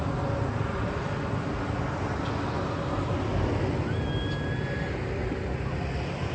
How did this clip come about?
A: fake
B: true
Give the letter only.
B